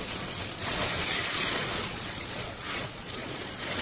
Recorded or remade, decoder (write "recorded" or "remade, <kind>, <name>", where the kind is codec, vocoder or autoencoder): remade, vocoder, Vocos